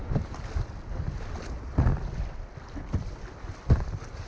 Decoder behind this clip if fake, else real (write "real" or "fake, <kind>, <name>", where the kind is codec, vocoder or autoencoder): real